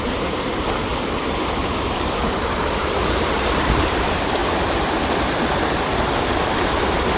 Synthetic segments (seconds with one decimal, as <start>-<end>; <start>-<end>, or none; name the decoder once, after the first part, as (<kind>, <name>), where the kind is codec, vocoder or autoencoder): 0.0-0.9 (vocoder, BigVGAN v2); 1.6-4.4; 6.3-7.2